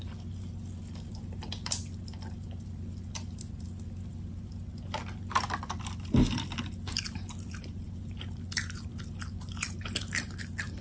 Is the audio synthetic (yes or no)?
no